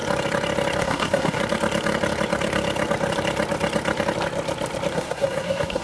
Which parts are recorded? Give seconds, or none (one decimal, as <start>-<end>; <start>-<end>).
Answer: 0.0-0.8; 1.4-4.9